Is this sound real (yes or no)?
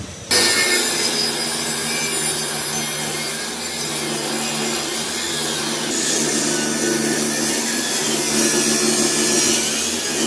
yes